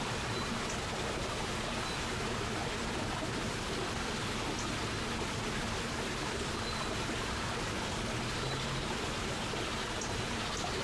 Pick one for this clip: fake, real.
real